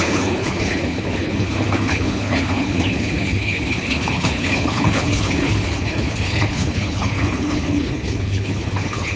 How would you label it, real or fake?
fake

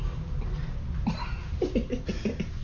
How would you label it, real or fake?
real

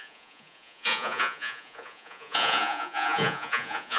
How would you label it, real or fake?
fake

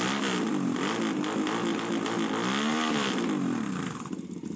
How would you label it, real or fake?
real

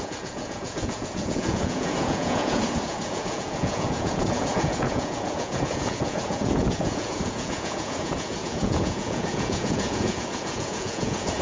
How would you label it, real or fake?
fake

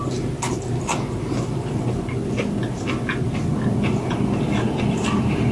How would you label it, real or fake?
real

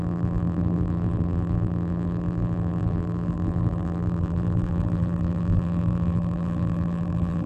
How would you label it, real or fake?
fake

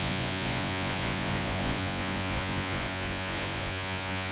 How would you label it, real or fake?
fake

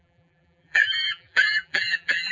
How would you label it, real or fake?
fake